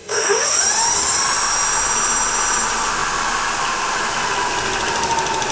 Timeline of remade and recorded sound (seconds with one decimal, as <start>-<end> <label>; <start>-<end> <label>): 0.0-0.6 remade; 0.6-5.5 recorded